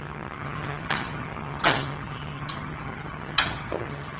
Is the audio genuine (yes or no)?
no